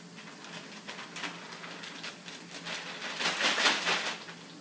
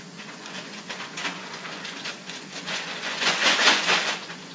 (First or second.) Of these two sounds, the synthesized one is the second